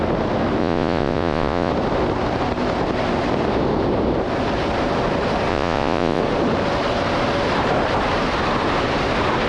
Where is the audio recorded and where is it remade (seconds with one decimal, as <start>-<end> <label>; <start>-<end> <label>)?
0.0-0.6 recorded; 0.6-1.7 remade; 1.7-5.5 recorded; 5.5-6.2 remade; 6.2-9.5 recorded